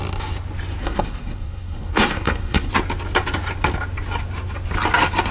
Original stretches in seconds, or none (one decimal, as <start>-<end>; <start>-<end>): 0.0-0.8; 2.7-5.3